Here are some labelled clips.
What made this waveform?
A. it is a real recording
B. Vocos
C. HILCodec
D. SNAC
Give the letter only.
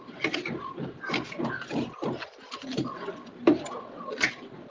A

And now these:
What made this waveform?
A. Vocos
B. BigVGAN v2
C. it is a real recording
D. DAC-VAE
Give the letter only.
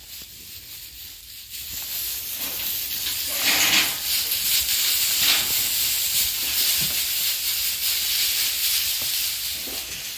C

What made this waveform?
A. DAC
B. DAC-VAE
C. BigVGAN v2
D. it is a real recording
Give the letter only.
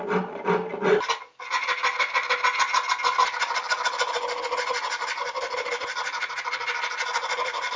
D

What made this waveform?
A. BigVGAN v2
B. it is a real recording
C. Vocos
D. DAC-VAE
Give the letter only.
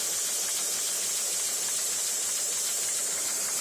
B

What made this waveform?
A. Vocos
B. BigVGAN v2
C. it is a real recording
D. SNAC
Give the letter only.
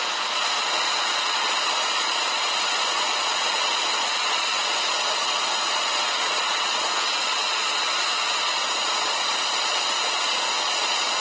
A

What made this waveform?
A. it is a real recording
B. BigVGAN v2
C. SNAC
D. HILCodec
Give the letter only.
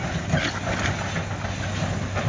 A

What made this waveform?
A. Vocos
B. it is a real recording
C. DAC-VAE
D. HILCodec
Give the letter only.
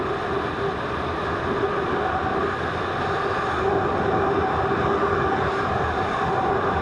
B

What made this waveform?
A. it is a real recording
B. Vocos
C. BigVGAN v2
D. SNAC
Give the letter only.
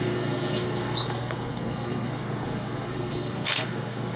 D